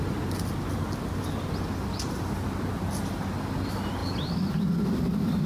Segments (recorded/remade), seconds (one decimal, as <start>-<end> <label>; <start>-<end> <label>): 0.0-5.5 recorded